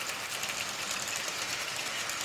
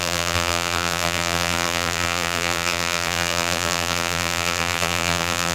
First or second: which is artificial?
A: second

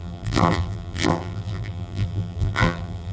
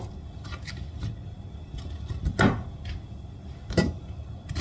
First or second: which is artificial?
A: first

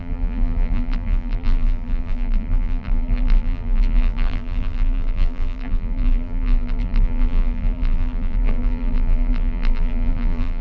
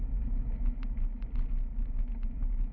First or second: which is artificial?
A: first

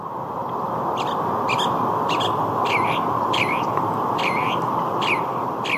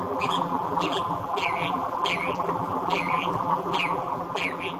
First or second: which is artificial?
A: second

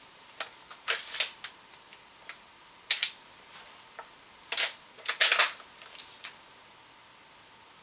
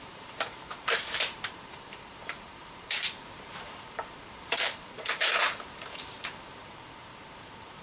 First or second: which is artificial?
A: second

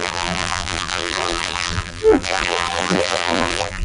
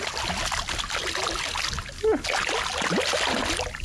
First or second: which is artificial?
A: first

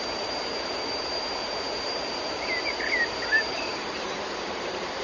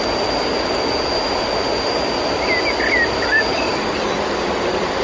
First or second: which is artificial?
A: first